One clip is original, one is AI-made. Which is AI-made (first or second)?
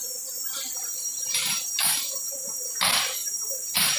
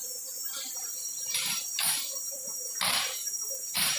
second